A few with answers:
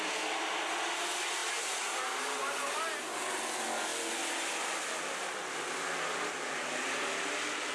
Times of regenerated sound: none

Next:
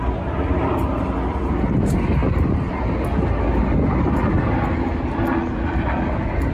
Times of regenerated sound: none

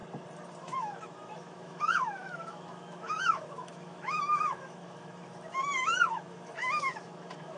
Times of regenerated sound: 0.6-7.6 (autoencoder, DAC-VAE)